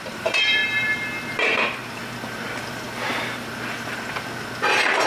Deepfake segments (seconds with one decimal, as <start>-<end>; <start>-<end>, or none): 0.0-0.6; 1.3-1.8